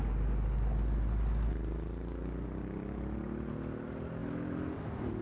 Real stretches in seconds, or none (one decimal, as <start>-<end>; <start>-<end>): 0.0-5.2